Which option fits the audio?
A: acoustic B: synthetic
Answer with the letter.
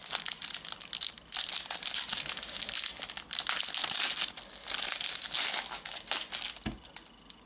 A